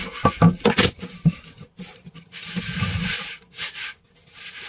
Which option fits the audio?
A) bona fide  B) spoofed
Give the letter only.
A